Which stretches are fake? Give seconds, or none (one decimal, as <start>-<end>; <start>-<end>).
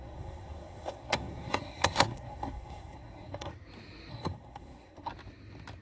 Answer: 0.0-3.5; 4.1-5.1